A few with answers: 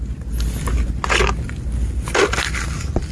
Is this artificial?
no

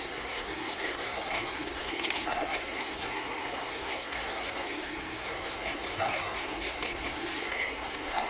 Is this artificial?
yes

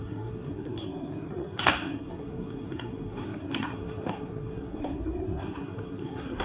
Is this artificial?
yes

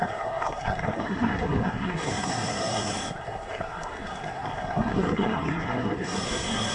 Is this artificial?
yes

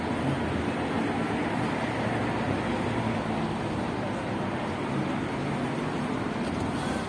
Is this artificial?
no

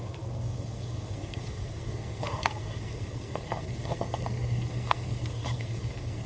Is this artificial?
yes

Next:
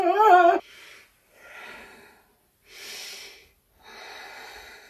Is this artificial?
no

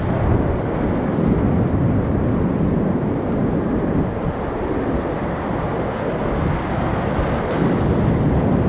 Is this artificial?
no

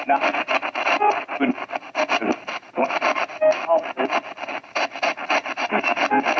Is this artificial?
no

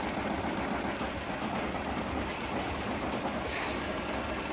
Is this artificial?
no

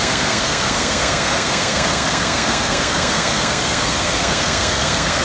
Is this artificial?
yes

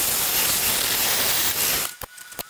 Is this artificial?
no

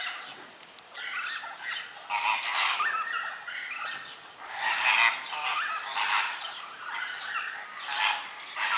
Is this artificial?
no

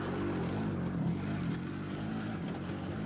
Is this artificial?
no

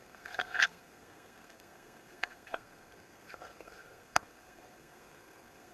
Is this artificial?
yes